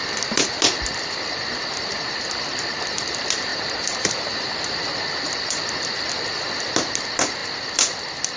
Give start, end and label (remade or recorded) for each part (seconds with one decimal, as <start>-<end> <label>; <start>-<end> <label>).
0.0-3.5 recorded; 3.5-4.5 remade; 4.5-8.4 recorded